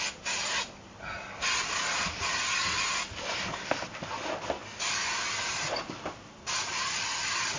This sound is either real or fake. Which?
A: real